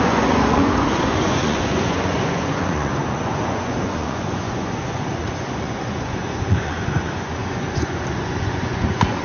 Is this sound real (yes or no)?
no